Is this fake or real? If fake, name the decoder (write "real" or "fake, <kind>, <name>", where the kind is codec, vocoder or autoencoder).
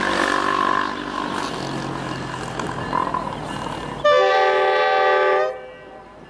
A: real